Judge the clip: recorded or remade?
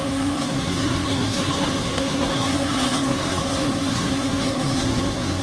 remade